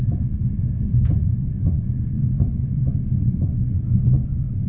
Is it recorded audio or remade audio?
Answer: remade